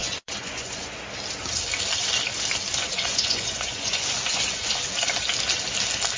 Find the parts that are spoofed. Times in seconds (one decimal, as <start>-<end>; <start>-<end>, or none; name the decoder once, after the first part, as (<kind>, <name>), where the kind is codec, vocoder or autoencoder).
0.0-1.0 (vocoder, Vocos); 2.8-4.7